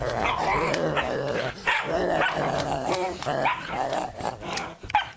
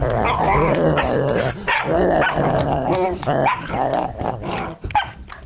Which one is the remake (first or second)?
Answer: first